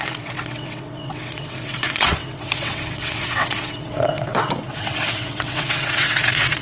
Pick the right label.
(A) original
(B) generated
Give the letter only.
B